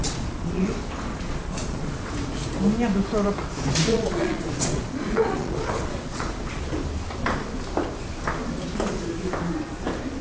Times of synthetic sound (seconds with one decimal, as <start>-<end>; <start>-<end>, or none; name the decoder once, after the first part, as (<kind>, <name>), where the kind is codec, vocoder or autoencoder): 0.0-0.7 (vocoder, Vocos); 1.1-2.1; 3.9-6.6